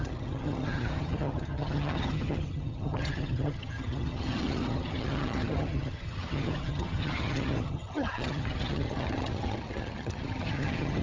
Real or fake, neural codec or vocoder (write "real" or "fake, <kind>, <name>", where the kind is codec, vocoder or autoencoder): fake, vocoder, HiFi-GAN